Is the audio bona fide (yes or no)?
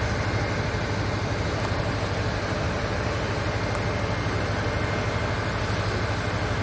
yes